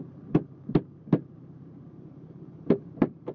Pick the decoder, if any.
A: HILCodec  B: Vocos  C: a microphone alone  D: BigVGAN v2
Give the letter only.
D